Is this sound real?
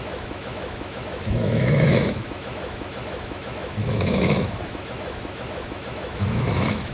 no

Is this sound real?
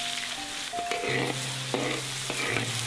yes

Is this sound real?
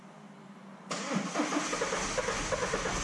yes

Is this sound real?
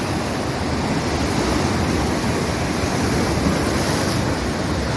yes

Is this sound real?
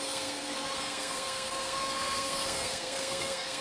no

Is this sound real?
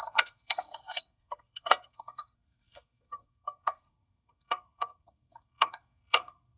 no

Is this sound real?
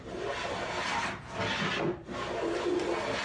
yes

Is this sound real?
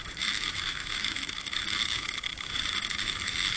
no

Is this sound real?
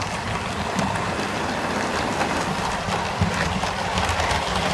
yes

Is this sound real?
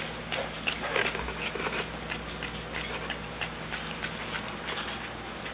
yes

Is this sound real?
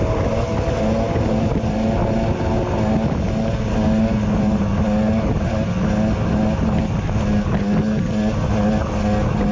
yes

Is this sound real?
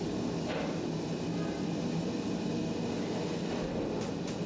yes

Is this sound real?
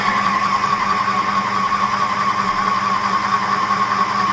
yes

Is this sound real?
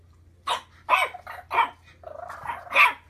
yes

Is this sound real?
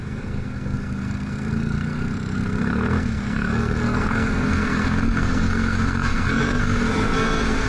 no